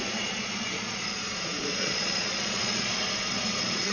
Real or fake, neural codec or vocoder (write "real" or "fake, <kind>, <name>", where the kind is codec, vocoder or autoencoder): fake, vocoder, Vocos